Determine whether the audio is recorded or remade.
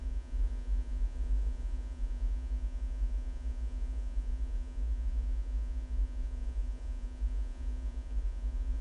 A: remade